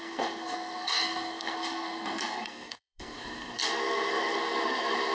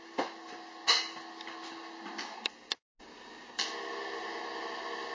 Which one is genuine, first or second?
second